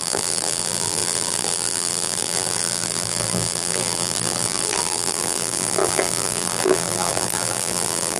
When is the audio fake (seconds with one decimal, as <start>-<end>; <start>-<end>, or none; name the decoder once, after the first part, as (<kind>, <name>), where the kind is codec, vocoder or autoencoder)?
0.0-8.2 (vocoder, BigVGAN v2)